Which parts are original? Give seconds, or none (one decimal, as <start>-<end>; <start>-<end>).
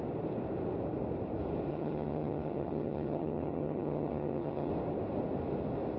0.0-1.7; 4.7-6.0